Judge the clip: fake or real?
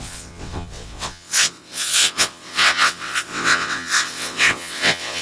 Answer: fake